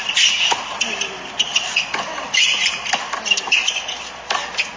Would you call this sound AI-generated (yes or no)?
no